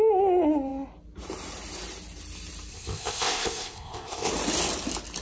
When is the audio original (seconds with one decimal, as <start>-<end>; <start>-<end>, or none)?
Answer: 0.0-2.7; 4.3-5.2